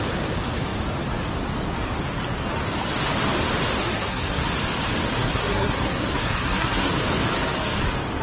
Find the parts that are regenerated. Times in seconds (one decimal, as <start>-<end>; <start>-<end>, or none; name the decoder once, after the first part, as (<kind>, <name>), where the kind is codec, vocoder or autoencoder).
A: 3.8-4.4 (codec, SNAC); 5.2-6.9